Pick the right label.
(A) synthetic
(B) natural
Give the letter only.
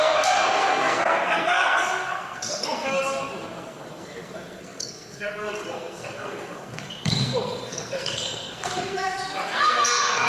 A